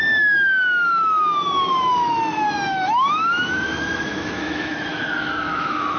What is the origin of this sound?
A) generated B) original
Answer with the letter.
A